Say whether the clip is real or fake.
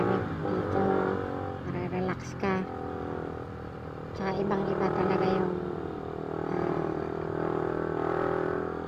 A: real